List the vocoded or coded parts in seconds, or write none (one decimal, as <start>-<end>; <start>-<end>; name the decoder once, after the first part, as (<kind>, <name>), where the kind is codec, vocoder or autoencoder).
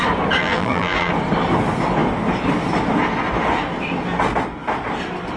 0.4-1.1 (vocoder, BigVGAN v2)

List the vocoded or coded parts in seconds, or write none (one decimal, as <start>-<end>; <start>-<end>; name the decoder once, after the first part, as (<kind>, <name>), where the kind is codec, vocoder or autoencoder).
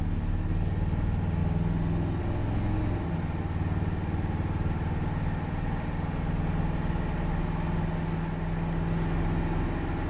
none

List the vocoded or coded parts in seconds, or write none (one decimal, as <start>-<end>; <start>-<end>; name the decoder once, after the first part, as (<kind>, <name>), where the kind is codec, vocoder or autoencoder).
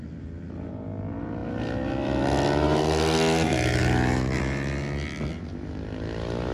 none